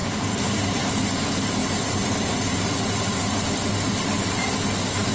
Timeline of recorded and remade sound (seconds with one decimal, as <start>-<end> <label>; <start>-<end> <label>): 0.0-1.0 remade; 1.0-5.1 recorded

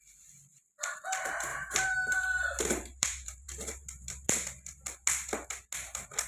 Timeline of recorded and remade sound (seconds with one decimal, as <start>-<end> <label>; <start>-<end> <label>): 0.0-0.5 recorded; 0.5-1.0 remade; 1.0-1.5 recorded; 1.5-4.3 remade; 4.3-6.3 recorded

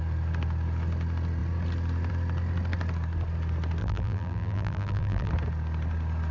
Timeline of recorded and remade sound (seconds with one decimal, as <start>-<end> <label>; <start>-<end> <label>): 0.0-3.8 recorded; 3.8-5.3 remade; 5.3-6.3 recorded